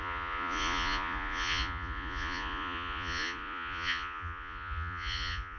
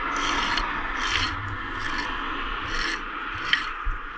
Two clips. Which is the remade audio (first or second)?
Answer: first